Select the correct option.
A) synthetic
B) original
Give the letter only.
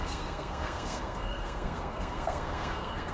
A